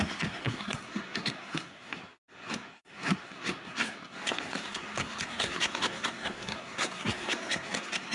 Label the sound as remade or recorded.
remade